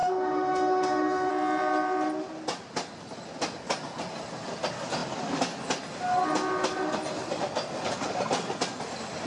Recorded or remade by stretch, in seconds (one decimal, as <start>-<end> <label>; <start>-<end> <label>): 0.0-1.3 remade; 1.3-9.3 recorded